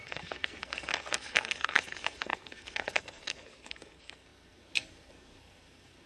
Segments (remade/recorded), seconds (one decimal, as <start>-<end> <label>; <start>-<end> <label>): 0.0-6.1 remade